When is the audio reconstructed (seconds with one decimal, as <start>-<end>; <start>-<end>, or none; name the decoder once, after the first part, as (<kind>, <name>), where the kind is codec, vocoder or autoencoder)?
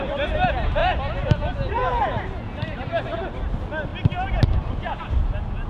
none